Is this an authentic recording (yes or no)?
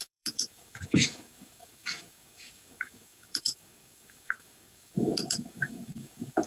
no